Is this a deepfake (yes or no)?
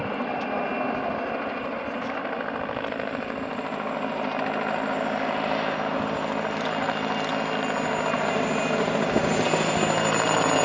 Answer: no